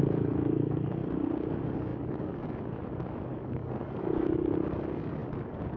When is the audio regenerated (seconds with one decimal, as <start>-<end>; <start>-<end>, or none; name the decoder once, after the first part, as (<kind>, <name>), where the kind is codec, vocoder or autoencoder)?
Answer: 0.0-1.0 (codec, DAC); 1.5-5.8